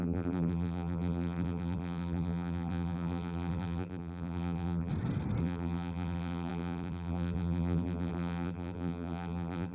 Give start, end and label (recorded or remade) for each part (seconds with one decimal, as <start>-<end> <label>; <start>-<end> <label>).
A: 0.0-4.9 remade; 4.9-5.4 recorded; 5.4-9.7 remade

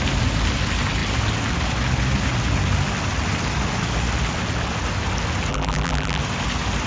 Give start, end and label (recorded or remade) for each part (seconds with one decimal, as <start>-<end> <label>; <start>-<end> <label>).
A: 0.0-5.5 recorded; 5.5-6.2 remade; 6.2-6.9 recorded